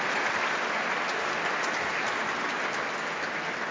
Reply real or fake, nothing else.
real